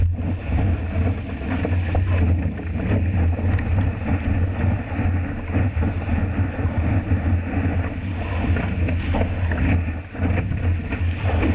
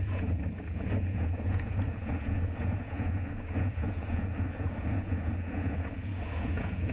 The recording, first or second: first